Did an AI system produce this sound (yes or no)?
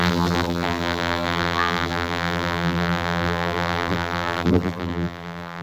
yes